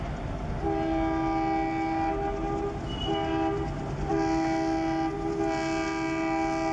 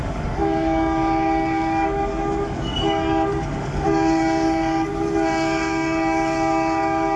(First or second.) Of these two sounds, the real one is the first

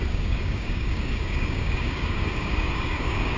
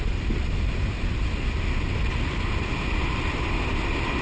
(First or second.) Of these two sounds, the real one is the second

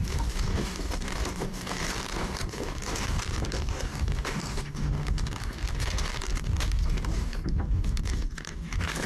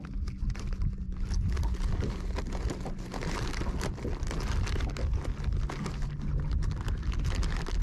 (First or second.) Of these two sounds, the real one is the second